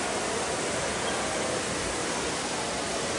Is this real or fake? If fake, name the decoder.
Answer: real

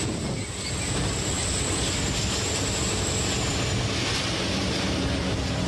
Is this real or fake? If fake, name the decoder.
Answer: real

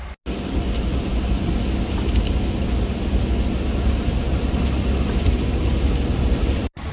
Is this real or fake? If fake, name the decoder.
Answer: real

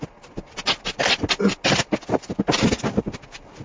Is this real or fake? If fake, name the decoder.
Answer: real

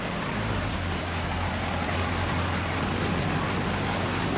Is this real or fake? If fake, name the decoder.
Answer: real